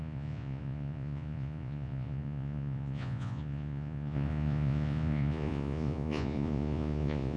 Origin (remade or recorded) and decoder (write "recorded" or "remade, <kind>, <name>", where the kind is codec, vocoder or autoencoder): remade, vocoder, Vocos